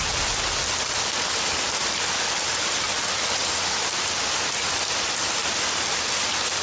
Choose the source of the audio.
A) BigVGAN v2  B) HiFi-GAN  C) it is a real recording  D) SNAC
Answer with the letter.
C